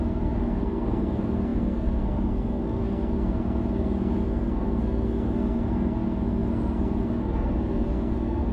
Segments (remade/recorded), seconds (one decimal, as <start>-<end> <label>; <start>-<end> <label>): 0.0-8.5 remade